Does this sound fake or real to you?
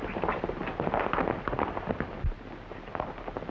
real